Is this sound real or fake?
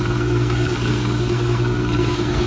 fake